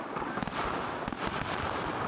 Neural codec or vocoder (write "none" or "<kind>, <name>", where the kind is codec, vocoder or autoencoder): none